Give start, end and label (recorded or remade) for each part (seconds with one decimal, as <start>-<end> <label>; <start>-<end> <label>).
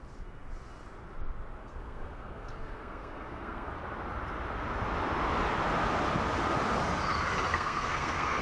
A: 0.0-1.6 recorded; 1.6-3.7 remade; 3.7-7.5 recorded; 7.5-8.4 remade